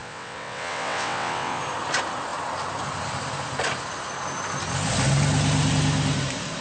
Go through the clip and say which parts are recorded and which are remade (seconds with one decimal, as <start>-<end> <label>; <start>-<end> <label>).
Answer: 0.0-1.6 remade; 1.6-6.6 recorded